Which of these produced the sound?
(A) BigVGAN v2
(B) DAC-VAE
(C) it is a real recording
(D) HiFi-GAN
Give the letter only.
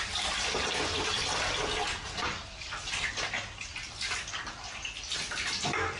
A